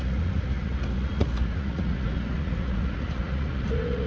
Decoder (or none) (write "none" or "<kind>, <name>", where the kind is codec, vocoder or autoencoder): vocoder, Vocos